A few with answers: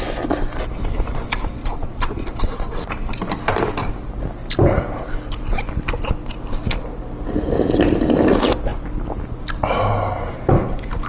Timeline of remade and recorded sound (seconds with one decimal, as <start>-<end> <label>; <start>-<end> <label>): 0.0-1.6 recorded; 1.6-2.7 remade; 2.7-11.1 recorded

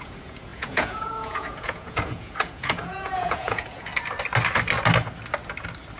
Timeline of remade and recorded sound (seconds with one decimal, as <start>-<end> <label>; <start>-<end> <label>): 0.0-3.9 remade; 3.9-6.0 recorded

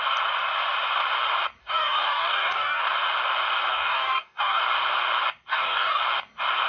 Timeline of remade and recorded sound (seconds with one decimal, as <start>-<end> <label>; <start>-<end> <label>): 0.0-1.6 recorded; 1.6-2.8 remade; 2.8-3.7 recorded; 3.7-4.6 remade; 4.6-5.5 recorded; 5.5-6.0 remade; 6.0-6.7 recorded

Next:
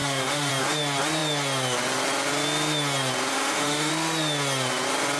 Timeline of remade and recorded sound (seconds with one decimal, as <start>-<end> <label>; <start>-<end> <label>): 0.0-0.5 remade; 0.5-3.3 recorded; 3.3-3.9 remade; 3.9-5.2 recorded

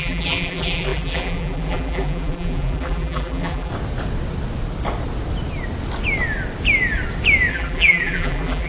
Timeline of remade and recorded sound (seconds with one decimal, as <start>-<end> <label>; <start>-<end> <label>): 0.0-3.7 remade; 3.7-7.5 recorded; 7.5-8.7 remade

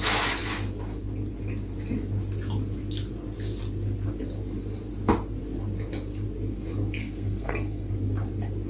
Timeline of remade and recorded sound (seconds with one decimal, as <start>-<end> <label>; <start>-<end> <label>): 0.0-7.0 recorded; 7.0-7.9 remade; 7.9-8.7 recorded

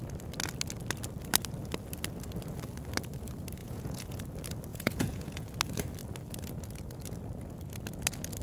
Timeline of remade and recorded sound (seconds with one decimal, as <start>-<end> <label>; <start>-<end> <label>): 0.0-3.6 recorded; 3.6-4.2 remade; 4.2-4.7 recorded; 4.7-5.5 remade; 5.5-8.4 recorded

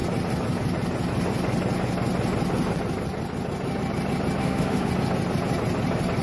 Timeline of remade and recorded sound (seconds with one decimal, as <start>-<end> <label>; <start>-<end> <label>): 0.0-4.4 recorded; 4.4-4.9 remade; 4.9-6.2 recorded